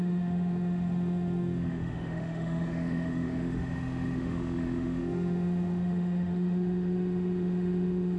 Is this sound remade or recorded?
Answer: remade